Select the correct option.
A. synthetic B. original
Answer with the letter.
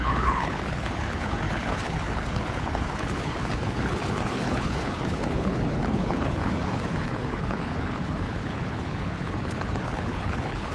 A